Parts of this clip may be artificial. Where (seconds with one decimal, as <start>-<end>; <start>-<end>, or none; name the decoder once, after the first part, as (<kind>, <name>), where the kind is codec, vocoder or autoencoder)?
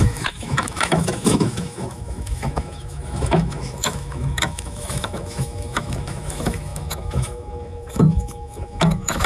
0.0-9.3 (autoencoder, DAC-VAE)